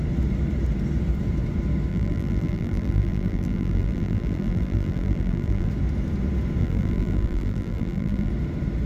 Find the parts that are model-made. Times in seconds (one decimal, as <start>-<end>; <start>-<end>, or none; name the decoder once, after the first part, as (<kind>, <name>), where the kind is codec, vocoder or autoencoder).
1.9-5.7 (vocoder, BigVGAN v2); 6.6-8.3